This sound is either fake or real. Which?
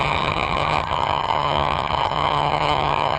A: fake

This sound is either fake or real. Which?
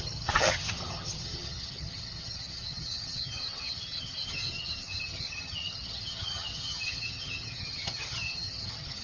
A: fake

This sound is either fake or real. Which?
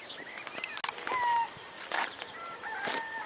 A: real